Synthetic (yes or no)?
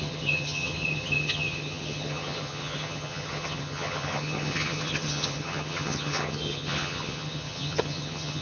yes